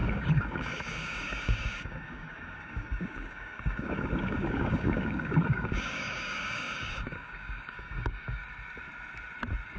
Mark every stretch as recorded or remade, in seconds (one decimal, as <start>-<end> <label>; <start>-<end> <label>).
0.0-8.4 remade; 8.4-9.8 recorded